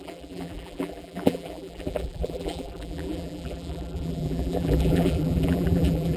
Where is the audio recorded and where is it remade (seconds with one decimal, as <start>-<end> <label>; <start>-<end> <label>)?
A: 0.0-6.2 remade